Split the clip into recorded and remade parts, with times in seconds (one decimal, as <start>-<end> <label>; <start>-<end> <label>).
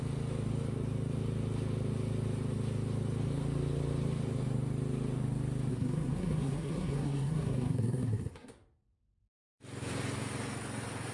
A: 0.0-5.7 recorded; 5.7-8.5 remade; 8.5-11.1 recorded